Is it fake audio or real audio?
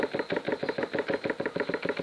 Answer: real